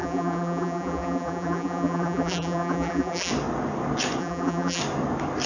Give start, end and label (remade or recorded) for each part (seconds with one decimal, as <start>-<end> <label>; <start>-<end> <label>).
0.0-3.3 remade; 3.3-4.2 recorded; 4.2-4.8 remade; 4.8-5.5 recorded

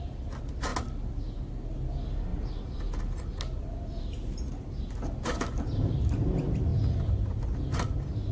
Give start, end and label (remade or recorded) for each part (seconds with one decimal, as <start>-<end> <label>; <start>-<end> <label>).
0.0-8.3 recorded

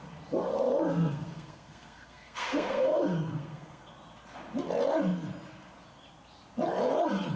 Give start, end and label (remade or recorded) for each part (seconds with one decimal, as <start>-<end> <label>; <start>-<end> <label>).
0.0-0.9 recorded; 0.9-3.9 remade; 3.9-7.4 recorded

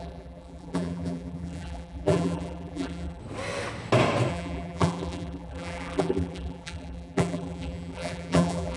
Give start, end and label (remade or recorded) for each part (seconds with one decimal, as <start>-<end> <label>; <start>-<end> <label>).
0.0-3.2 remade; 3.2-4.3 recorded; 4.3-8.8 remade

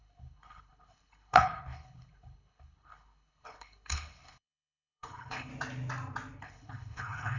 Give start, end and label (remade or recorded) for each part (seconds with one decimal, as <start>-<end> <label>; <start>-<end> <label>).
0.0-5.5 remade; 5.5-6.4 recorded; 6.4-7.4 remade

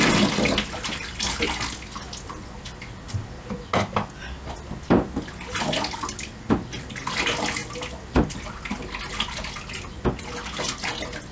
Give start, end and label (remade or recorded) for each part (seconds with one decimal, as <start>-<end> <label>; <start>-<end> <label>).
0.0-11.3 recorded

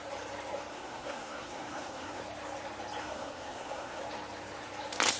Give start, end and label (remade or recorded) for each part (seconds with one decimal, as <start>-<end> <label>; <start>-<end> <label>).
0.0-0.7 recorded; 0.7-2.2 remade; 2.2-3.0 recorded; 3.0-4.0 remade; 4.0-5.2 recorded

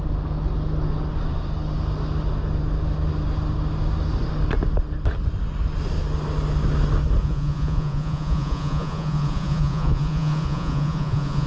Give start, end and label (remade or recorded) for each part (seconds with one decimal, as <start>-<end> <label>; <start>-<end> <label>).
0.0-7.2 recorded; 7.2-11.5 remade